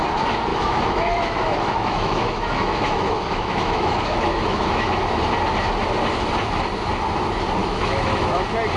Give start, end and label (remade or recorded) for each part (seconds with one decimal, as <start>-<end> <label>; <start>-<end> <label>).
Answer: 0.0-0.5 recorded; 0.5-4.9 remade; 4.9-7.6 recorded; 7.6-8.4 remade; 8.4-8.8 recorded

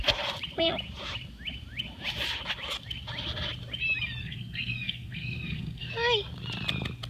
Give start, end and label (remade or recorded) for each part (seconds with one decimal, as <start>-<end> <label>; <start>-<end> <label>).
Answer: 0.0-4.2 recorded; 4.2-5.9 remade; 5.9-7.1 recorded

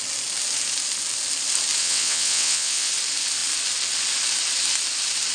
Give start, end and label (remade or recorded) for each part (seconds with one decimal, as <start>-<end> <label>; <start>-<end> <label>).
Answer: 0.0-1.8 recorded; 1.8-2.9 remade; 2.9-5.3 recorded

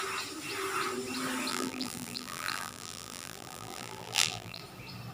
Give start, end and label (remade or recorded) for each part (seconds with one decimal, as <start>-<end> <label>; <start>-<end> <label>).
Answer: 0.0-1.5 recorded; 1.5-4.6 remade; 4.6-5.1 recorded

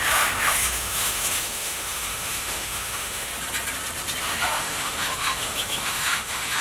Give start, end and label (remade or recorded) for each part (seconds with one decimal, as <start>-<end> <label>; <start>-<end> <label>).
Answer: 0.0-3.3 remade; 3.3-4.2 recorded; 4.2-6.6 remade

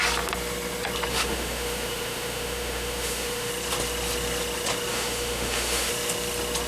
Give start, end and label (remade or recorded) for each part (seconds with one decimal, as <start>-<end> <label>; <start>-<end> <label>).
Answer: 0.0-1.1 recorded; 1.1-3.5 remade; 3.5-4.9 recorded; 4.9-5.9 remade; 5.9-6.7 recorded

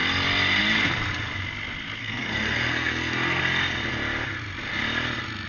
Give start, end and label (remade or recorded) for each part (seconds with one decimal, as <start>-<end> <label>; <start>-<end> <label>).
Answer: 0.0-2.0 recorded; 2.0-3.4 remade; 3.4-5.5 recorded

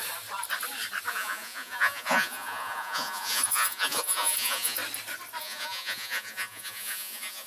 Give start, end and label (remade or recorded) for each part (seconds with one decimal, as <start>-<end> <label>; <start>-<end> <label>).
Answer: 0.0-1.1 recorded; 1.1-4.8 remade; 4.8-5.4 recorded; 5.4-7.5 remade